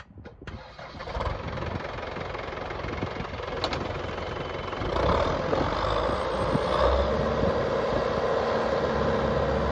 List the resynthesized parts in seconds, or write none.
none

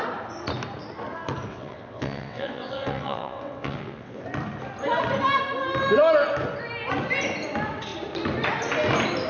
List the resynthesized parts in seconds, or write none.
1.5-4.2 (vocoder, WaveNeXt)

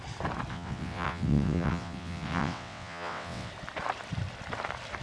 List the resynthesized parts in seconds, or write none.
0.5-3.5 (vocoder, WaveNeXt)